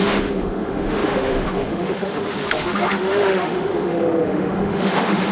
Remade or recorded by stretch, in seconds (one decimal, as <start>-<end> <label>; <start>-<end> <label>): 0.0-5.3 remade